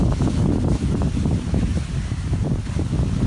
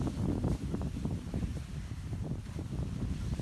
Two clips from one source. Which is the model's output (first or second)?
second